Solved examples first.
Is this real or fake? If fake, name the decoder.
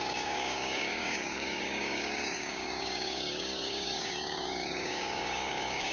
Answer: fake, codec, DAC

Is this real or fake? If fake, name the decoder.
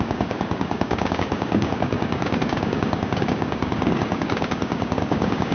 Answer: fake, codec, DAC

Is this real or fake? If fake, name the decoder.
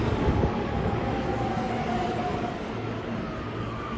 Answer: fake, codec, DAC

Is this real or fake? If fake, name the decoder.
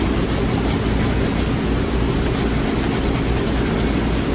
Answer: real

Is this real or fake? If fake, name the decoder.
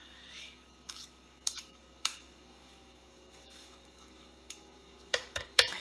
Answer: fake, codec, DAC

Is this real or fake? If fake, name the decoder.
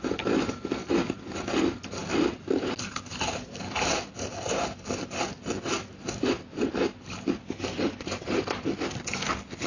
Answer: real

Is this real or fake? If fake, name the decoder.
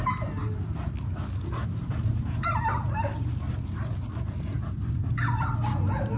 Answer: real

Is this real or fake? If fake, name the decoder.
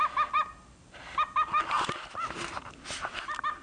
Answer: real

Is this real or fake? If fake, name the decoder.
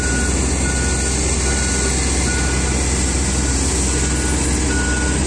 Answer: real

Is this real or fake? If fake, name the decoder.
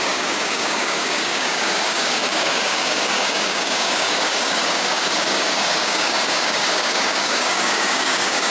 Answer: fake, codec, DAC